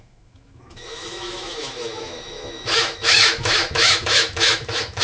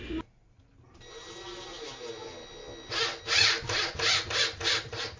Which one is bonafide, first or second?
second